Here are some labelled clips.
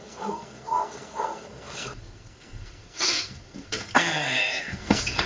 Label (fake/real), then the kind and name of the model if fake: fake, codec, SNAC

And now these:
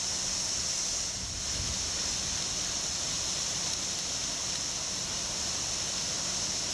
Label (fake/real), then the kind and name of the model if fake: real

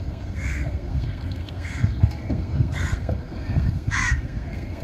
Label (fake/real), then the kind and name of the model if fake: fake, codec, SNAC